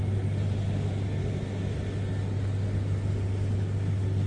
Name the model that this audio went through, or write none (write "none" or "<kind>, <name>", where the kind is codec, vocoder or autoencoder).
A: none